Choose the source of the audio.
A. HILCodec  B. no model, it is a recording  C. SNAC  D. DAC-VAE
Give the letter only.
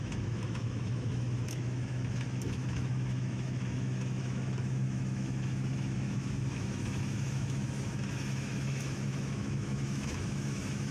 D